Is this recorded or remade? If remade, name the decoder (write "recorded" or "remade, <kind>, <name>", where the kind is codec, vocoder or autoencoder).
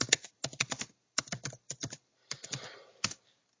remade, vocoder, BigVGAN v2